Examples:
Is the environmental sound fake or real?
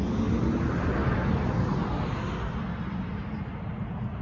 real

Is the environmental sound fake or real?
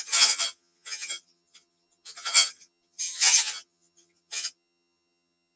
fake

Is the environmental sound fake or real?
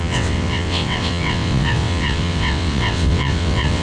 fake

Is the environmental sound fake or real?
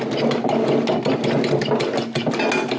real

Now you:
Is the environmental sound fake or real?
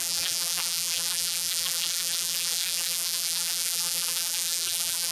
fake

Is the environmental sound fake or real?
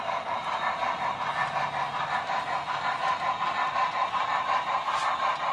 real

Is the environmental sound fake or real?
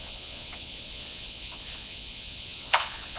fake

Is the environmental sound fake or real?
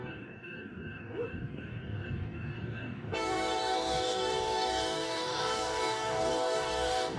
fake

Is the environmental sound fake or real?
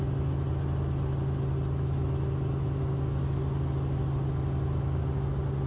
real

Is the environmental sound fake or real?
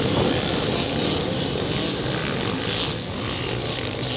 real